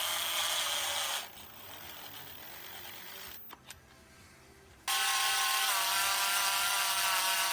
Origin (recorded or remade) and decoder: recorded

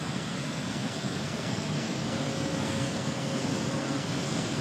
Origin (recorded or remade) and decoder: remade, codec, SNAC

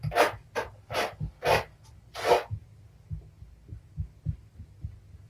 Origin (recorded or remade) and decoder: recorded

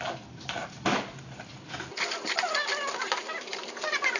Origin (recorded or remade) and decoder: recorded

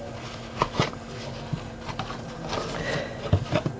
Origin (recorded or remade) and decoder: recorded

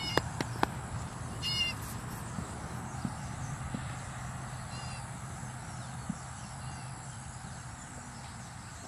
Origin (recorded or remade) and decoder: recorded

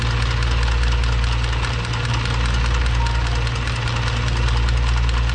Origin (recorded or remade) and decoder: recorded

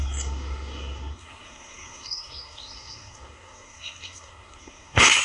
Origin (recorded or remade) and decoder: remade, codec, SNAC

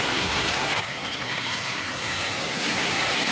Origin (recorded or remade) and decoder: remade, codec, SNAC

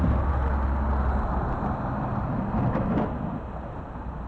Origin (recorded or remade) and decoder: recorded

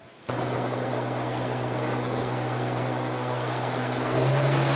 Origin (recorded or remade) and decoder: remade, codec, SNAC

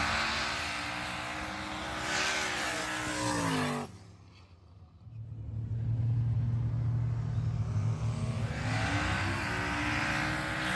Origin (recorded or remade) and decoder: recorded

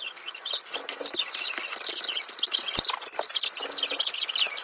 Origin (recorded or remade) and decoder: recorded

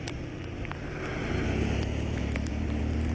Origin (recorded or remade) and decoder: recorded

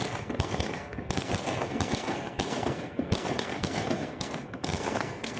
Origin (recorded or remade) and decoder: remade, codec, SNAC